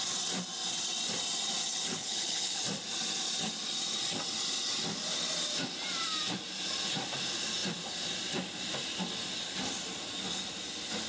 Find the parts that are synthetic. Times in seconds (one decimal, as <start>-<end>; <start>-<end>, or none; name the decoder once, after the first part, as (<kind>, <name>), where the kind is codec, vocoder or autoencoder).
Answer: 1.9-2.6 (codec, HILCodec)